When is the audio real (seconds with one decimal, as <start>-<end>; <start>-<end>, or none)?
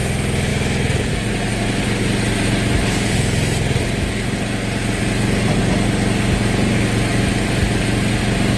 0.0-8.6